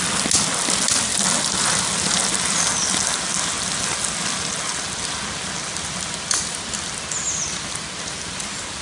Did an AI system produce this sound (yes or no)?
no